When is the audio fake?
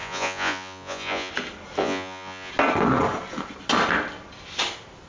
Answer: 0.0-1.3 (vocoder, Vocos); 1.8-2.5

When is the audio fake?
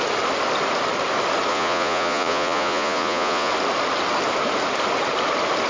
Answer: 1.5-3.5 (vocoder, Vocos)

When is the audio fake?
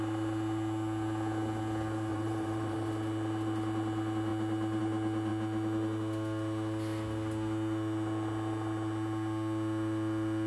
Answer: 2.1-2.9 (vocoder, BigVGAN v2)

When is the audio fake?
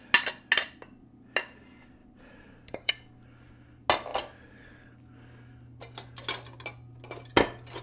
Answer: 2.0-2.9 (vocoder, BigVGAN v2)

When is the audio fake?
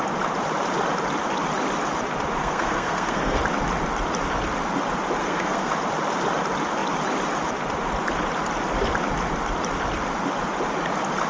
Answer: 2.4-3.4 (codec, SNAC); 5.2-5.7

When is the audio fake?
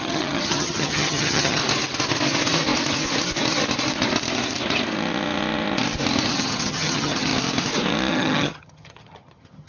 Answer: 0.0-1.6 (vocoder, HiFi-GAN); 6.3-7.3; 8.1-9.7